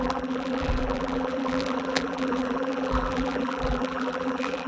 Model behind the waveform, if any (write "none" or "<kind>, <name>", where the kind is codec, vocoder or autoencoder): vocoder, BigVGAN v2